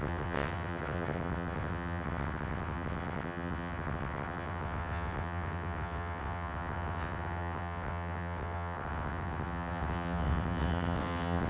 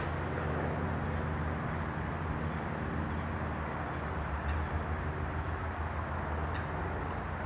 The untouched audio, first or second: second